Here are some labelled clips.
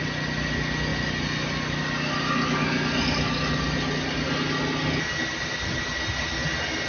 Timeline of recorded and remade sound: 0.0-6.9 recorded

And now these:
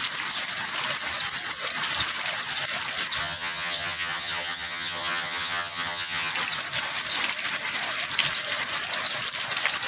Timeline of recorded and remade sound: 0.0-3.2 recorded; 3.2-6.3 remade; 6.3-9.9 recorded

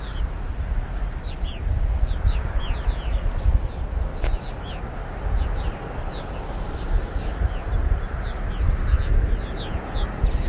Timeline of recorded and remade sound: 0.0-10.5 recorded

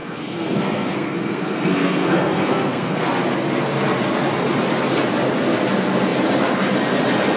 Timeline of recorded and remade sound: 0.0-3.0 remade; 3.0-7.4 recorded

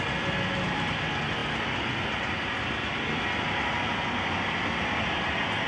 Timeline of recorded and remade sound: 0.0-5.7 recorded

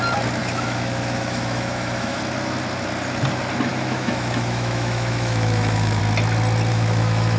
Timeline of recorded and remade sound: 0.0-0.4 recorded; 0.4-2.2 remade; 2.2-3.7 recorded; 3.7-6.0 remade; 6.0-6.7 recorded; 6.7-7.4 remade

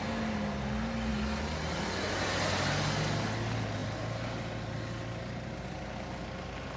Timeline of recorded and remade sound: 0.0-6.8 recorded